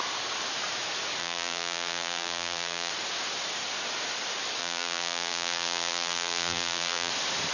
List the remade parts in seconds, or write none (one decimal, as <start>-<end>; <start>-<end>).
1.2-2.9; 4.6-7.1